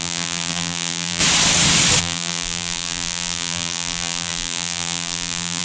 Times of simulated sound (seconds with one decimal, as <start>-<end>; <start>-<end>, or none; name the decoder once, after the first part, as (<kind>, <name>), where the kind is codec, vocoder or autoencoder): 0.0-1.2 (vocoder, BigVGAN v2); 2.0-5.6